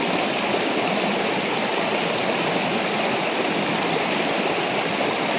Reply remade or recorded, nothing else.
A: recorded